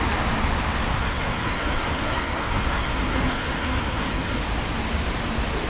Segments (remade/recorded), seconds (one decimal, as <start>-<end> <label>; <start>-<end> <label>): 0.0-1.0 recorded; 1.0-4.4 remade; 4.4-5.7 recorded